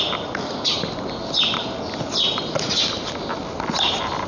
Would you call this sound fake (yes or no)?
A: no